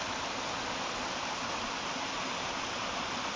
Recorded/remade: recorded